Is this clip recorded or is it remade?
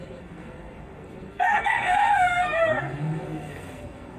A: remade